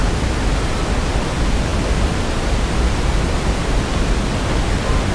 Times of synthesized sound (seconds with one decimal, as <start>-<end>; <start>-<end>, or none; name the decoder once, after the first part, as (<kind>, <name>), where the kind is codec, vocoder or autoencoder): none